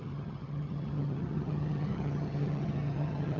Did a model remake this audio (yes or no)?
yes